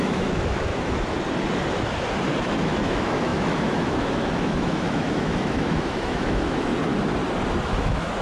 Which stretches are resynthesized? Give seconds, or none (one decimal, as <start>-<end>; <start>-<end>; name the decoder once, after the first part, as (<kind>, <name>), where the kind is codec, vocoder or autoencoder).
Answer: 0.0-0.7 (autoencoder, DAC-VAE); 2.4-6.7; 7.6-8.2